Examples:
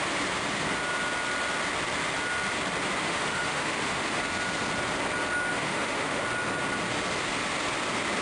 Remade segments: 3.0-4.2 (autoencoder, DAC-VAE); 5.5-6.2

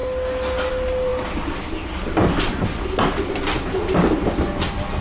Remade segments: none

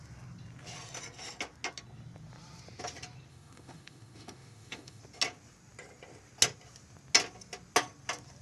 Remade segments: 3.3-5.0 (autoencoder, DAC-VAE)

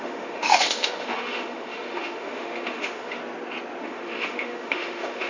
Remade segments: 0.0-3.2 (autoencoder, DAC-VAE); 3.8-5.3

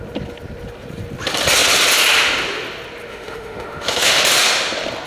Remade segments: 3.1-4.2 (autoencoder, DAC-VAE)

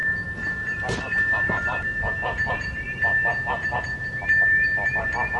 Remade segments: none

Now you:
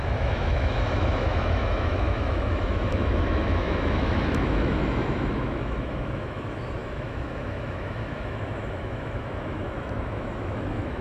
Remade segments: 0.0-11.0 (autoencoder, DAC-VAE)

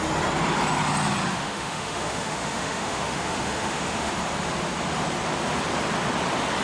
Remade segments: 1.3-4.1 (autoencoder, DAC-VAE)